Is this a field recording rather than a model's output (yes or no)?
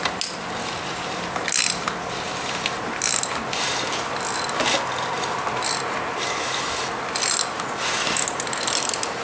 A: yes